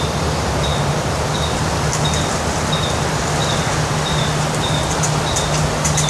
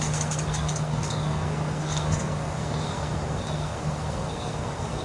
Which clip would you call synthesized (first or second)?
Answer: second